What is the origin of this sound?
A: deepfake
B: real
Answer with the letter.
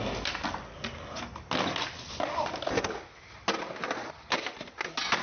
B